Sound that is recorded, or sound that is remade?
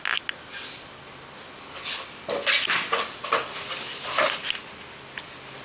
recorded